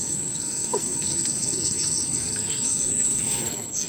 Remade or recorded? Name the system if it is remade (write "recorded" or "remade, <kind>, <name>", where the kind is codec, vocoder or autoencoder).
remade, codec, SNAC